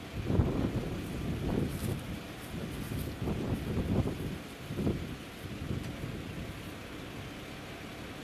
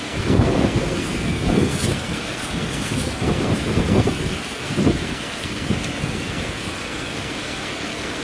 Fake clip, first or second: second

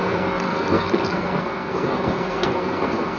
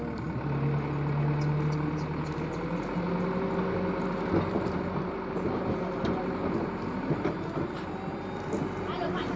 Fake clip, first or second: first